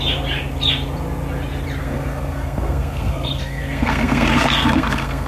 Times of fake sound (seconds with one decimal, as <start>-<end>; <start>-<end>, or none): 1.8-5.3